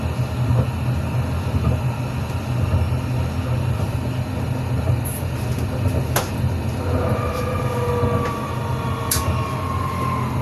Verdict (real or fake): real